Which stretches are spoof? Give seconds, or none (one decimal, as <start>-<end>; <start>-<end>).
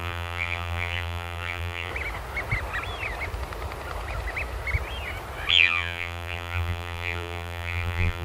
0.0-1.9; 5.5-8.2